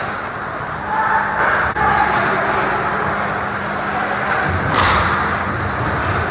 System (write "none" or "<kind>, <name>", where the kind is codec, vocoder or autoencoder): none